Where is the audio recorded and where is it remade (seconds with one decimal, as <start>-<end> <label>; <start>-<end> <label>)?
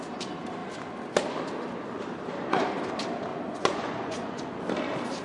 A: 0.0-3.3 recorded; 3.3-4.6 remade; 4.6-5.2 recorded